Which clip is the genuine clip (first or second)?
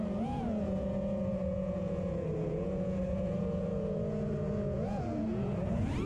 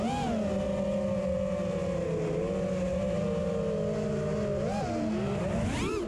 second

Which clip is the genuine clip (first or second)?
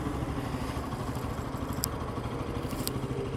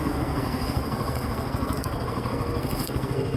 first